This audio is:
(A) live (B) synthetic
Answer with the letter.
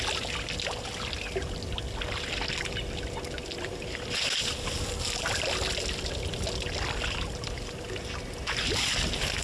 A